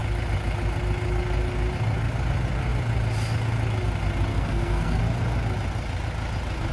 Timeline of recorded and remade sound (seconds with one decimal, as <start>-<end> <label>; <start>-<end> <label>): 0.0-4.3 recorded; 4.3-5.0 remade; 5.0-6.7 recorded